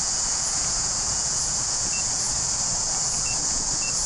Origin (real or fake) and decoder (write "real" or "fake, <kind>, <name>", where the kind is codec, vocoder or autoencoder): fake, vocoder, Vocos